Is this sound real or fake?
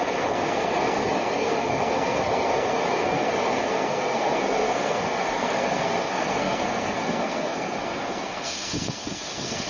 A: fake